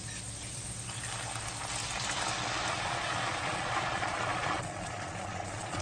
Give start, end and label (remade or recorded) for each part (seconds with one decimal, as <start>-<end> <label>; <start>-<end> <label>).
0.0-2.7 recorded; 2.7-5.8 remade